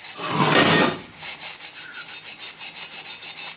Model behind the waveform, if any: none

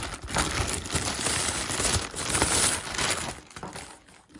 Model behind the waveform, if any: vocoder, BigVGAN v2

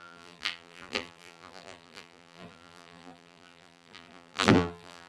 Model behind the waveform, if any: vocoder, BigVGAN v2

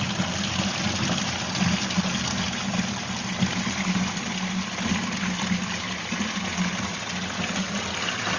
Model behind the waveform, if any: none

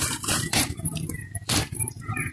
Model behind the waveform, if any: vocoder, BigVGAN v2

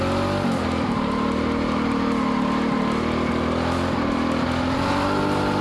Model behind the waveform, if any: none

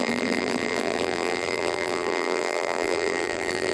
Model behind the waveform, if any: vocoder, BigVGAN v2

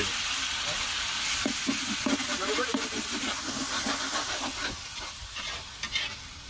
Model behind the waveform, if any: none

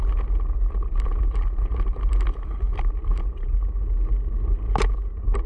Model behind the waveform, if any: none